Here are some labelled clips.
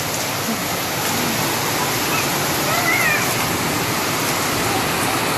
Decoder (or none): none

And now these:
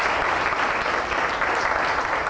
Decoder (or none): none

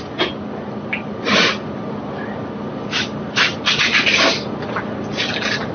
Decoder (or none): none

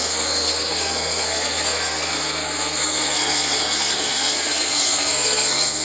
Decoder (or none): codec, SNAC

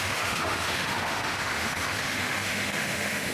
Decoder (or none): autoencoder, DAC-VAE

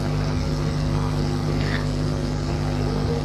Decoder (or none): codec, SNAC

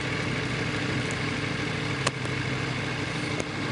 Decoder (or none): none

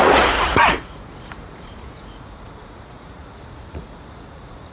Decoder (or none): vocoder, Vocos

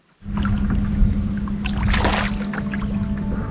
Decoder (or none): none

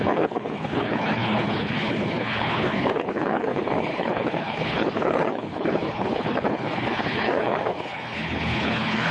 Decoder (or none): codec, HILCodec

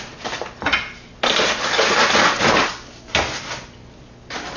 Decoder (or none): none